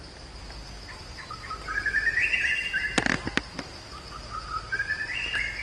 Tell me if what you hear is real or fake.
real